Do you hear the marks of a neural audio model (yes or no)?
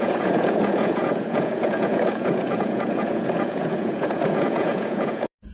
yes